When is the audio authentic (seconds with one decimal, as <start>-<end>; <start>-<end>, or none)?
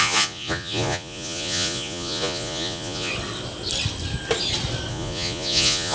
3.1-4.9